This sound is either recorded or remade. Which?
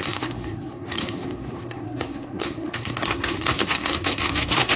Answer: remade